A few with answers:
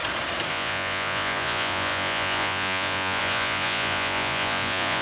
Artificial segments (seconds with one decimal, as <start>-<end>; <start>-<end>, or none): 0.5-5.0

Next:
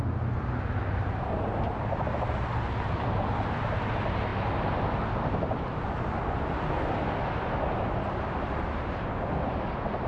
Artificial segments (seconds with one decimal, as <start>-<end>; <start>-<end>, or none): none

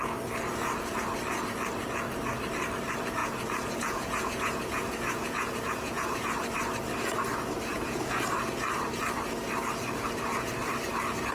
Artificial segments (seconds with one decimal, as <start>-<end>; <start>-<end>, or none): 3.2-6.2; 7.7-8.2